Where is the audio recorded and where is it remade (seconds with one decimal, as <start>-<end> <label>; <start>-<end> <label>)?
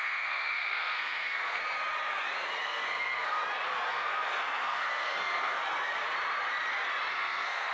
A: 0.0-1.6 remade; 1.6-2.6 recorded; 2.6-3.4 remade; 3.4-3.9 recorded; 3.9-5.6 remade; 5.6-7.1 recorded; 7.1-7.7 remade